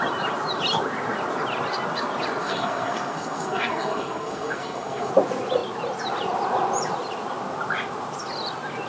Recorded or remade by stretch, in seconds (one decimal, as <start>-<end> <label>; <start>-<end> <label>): 0.0-2.4 recorded; 2.4-5.1 remade; 5.1-8.9 recorded